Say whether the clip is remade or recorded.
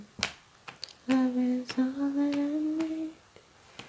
recorded